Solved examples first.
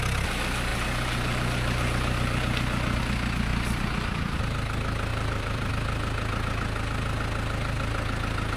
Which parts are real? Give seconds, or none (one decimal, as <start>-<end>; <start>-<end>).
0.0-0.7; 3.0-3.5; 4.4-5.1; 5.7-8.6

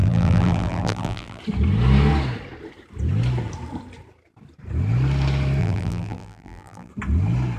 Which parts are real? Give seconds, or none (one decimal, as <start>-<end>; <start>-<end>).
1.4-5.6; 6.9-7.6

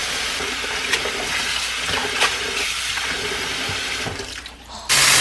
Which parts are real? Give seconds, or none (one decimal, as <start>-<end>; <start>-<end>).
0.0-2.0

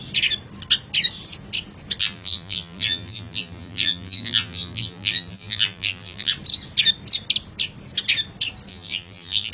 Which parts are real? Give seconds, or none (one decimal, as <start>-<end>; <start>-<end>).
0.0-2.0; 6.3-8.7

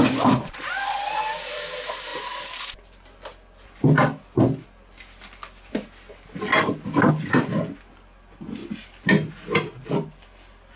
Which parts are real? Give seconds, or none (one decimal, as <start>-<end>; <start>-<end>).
2.1-7.1; 8.6-9.3

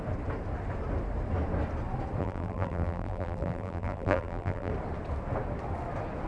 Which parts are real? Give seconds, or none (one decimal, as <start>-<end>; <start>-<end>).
0.0-2.2; 4.7-6.3

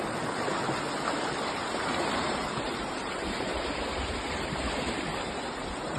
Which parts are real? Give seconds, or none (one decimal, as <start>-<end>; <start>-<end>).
0.0-1.6; 4.2-5.1